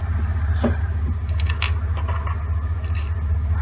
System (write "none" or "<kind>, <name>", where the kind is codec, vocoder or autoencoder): none